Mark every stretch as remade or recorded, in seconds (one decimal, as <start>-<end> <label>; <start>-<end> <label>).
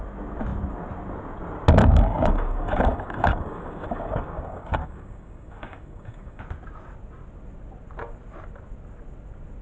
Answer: 0.0-1.8 recorded; 1.8-6.4 remade; 6.4-9.6 recorded